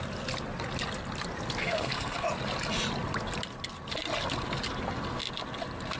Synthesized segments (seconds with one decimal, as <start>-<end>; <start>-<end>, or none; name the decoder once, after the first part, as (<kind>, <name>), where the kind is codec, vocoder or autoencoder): 1.6-2.3 (codec, SNAC)